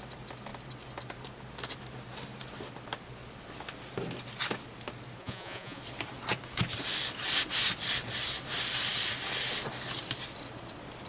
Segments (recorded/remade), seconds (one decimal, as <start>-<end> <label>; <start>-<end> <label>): 0.0-5.2 recorded; 5.2-5.8 remade; 5.8-11.1 recorded